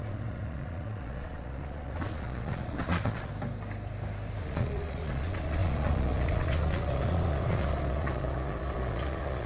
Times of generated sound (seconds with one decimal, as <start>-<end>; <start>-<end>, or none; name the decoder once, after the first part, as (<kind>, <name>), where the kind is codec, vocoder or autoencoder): 0.0-3.3 (vocoder, Vocos); 4.4-9.5